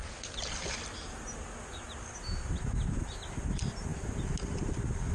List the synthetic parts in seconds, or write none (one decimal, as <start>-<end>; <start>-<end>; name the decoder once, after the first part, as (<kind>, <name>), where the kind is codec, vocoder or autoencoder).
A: none